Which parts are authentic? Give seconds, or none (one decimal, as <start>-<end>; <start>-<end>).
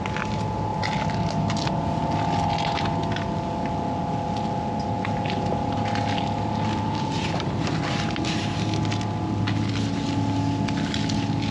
0.0-11.5